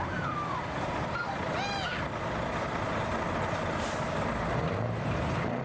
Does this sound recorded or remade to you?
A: recorded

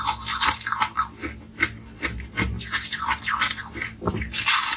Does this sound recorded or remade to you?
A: recorded